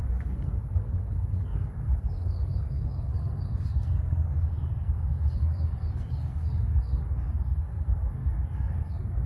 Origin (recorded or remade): remade